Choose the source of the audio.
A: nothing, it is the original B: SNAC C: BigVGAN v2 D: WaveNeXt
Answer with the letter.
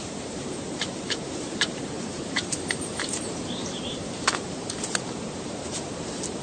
C